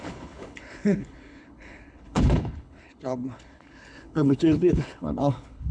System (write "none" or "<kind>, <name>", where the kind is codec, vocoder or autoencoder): codec, HILCodec